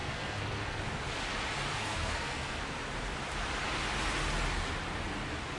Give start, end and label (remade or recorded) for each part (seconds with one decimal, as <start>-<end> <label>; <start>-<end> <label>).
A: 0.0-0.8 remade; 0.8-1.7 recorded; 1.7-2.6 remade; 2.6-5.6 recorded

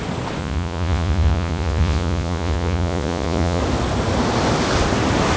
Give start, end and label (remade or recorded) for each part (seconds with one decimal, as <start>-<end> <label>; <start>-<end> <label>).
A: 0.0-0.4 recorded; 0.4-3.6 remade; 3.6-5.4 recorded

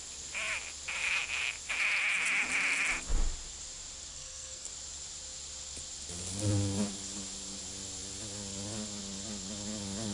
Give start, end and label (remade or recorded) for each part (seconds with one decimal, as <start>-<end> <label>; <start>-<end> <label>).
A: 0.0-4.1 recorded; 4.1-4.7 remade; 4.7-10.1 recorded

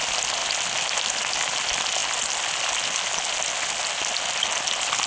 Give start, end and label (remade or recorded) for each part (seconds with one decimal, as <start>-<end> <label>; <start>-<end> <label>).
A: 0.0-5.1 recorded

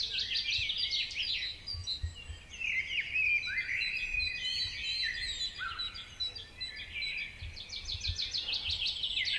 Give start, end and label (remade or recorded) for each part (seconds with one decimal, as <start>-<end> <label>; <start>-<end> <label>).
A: 0.0-9.4 recorded

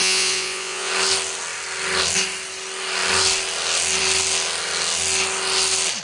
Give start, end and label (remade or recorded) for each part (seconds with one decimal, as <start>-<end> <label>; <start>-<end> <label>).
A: 0.0-0.9 remade; 0.9-6.0 recorded

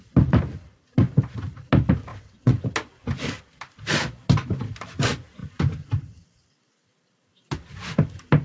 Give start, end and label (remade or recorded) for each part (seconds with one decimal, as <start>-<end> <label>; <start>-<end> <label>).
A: 0.0-2.1 recorded; 2.1-2.6 remade; 2.6-8.4 recorded

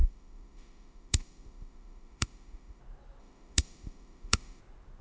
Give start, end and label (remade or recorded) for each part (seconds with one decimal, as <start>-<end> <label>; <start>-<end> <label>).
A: 0.0-2.8 remade; 2.8-3.2 recorded; 3.2-4.6 remade; 4.6-5.0 recorded